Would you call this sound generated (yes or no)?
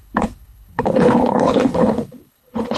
yes